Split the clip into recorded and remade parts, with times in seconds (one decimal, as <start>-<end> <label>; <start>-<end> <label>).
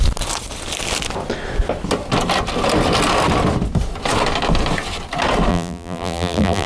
0.0-5.5 recorded; 5.5-6.7 remade